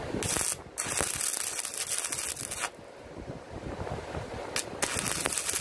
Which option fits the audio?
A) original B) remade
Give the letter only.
A